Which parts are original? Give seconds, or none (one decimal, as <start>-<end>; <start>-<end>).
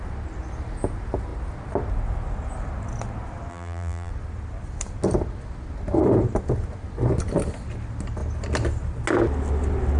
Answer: 0.0-3.5; 4.1-10.0